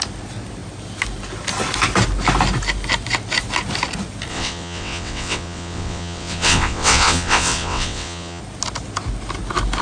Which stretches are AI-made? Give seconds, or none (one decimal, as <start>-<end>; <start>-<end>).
4.3-8.4